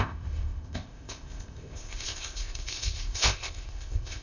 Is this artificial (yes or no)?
yes